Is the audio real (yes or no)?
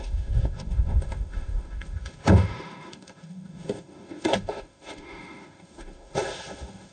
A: no